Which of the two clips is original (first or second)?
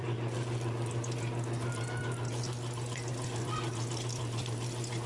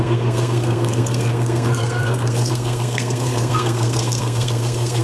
first